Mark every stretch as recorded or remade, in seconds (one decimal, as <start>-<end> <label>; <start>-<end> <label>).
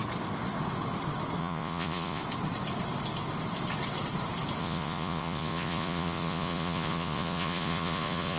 0.0-1.4 recorded; 1.4-2.2 remade; 2.2-4.6 recorded; 4.6-8.4 remade